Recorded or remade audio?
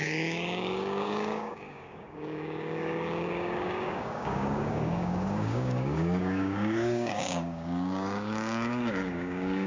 remade